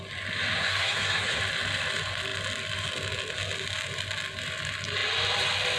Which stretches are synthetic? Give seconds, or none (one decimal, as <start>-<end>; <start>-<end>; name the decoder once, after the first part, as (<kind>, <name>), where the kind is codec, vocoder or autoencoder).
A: 0.6-1.4 (codec, SNAC)